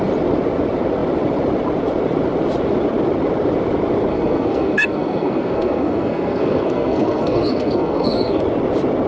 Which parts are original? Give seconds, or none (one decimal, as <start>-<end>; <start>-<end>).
0.0-4.1; 8.4-9.1